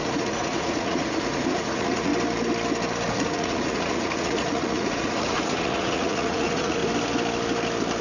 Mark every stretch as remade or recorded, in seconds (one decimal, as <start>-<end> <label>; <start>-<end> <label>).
0.0-2.1 remade; 2.1-3.1 recorded; 3.1-6.8 remade; 6.8-8.0 recorded